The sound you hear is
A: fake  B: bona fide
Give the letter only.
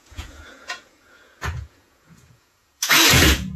A